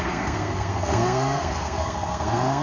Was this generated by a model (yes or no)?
yes